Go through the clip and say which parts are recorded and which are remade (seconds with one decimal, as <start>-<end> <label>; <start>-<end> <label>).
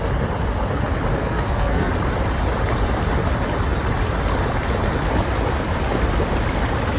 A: 0.0-1.2 recorded; 1.2-1.9 remade; 1.9-7.0 recorded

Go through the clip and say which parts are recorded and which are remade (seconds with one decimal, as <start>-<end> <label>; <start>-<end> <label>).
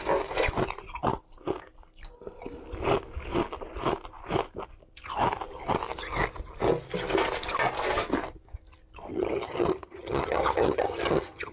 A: 0.0-9.1 recorded; 9.1-11.5 remade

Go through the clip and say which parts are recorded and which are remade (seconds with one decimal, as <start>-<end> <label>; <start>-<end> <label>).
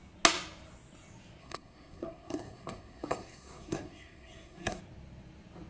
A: 0.0-1.4 recorded; 1.4-4.8 remade; 4.8-5.7 recorded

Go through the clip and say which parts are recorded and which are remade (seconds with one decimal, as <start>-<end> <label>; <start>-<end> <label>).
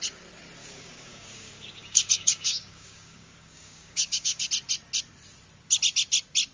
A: 0.0-0.6 recorded; 0.6-4.5 remade; 4.5-6.5 recorded